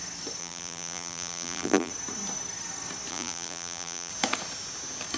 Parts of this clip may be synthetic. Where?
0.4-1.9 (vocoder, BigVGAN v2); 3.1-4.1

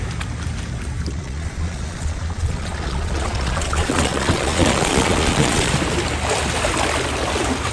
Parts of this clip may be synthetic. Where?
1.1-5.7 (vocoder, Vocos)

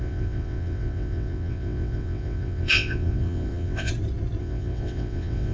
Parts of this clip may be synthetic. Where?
0.0-3.9 (vocoder, WaveNeXt); 4.4-5.5